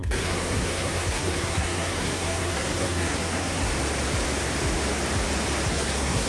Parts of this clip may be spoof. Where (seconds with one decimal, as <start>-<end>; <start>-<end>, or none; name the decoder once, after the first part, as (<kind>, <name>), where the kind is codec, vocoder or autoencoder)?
0.0-3.7 (codec, SNAC); 5.7-6.3